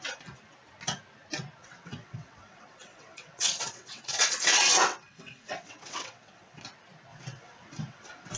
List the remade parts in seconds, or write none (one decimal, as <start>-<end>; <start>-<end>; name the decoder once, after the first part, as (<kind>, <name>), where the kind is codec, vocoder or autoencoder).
1.6-6.6 (vocoder, WaveNeXt); 7.1-8.4